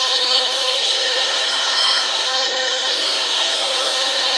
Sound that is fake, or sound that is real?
fake